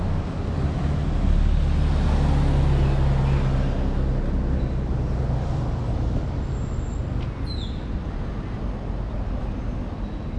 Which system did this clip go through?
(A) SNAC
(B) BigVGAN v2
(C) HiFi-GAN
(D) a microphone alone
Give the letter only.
D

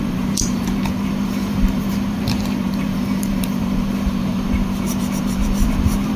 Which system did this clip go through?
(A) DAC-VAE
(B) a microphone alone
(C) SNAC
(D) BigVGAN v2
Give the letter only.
D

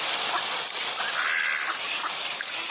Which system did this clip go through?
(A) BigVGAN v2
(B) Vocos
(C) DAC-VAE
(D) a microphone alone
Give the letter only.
A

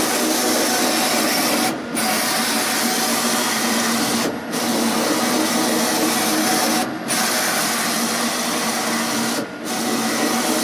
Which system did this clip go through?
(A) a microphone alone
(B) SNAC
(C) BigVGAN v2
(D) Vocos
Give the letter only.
A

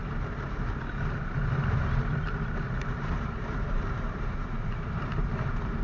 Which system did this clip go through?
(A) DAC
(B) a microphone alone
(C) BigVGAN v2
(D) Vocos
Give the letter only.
C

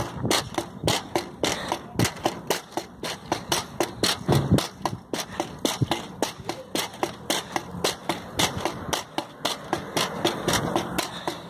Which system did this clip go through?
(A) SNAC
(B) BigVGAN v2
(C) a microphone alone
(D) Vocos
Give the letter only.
C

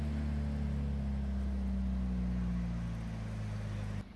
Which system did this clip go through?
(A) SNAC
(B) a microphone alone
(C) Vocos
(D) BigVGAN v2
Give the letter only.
B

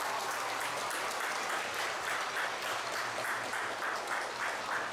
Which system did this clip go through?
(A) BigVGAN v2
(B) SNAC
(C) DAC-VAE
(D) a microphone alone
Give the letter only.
A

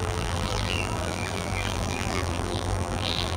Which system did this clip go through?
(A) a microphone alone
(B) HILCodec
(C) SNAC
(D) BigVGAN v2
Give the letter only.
D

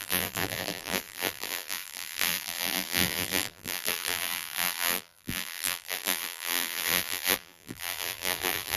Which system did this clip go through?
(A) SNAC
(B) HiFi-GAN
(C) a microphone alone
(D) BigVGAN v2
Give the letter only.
D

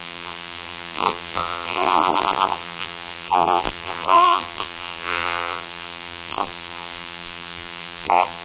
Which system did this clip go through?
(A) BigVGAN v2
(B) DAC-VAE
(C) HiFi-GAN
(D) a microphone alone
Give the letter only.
A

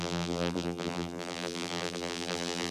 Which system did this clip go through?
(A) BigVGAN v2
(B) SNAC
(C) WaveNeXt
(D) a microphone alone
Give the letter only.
A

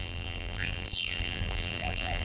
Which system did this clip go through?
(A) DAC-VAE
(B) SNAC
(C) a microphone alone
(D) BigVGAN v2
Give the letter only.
D